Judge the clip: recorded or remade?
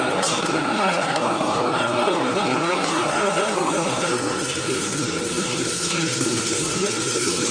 remade